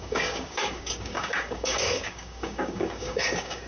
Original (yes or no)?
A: no